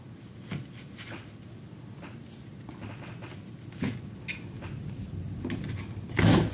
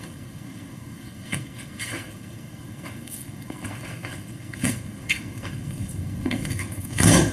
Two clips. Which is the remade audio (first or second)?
second